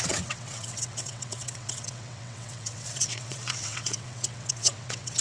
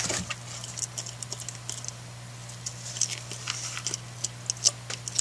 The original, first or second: second